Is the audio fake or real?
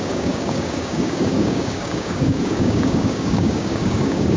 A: fake